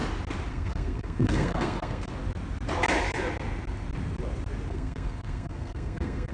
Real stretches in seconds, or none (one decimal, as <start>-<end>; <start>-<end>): 0.0-0.5; 2.1-4.7